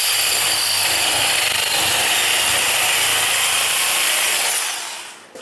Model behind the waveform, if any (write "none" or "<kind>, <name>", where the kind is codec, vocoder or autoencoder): vocoder, BigVGAN v2